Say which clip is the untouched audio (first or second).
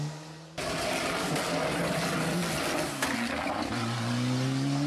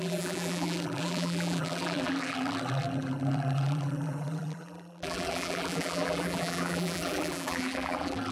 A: first